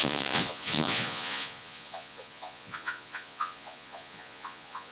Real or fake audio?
fake